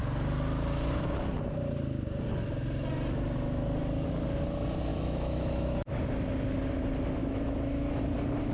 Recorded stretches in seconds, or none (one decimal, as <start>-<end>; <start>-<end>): 0.0-4.9; 6.0-7.2; 8.0-8.5